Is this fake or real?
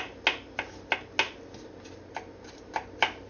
real